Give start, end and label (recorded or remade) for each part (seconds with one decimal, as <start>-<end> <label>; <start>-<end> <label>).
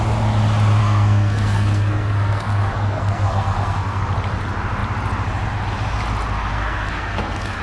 0.0-0.8 recorded; 0.8-4.0 remade; 4.0-6.5 recorded; 6.5-7.6 remade